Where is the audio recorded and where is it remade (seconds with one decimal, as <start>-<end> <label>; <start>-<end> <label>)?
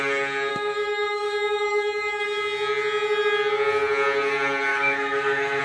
0.0-0.5 recorded; 0.5-2.2 remade; 2.2-4.7 recorded; 4.7-5.6 remade